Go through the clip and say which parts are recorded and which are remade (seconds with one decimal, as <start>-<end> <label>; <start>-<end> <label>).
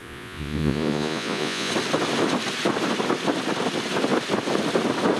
0.0-1.7 remade; 1.7-5.2 recorded